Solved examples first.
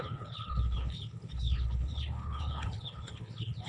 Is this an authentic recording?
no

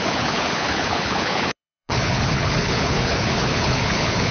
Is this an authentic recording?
no